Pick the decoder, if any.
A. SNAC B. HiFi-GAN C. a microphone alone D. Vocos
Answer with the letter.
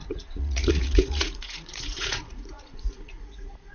D